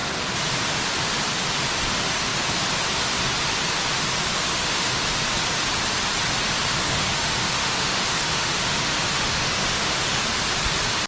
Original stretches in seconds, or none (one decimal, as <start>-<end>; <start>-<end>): 0.0-4.5; 5.0-6.8; 10.2-11.1